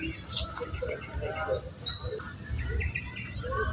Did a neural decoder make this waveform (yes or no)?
no